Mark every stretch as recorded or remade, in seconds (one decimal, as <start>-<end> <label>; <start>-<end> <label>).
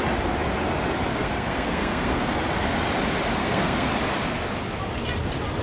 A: 0.0-1.2 recorded; 1.2-2.2 remade; 2.2-3.4 recorded; 3.4-3.9 remade; 3.9-5.6 recorded